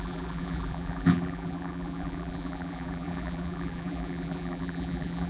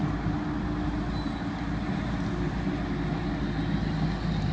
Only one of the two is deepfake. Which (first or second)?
first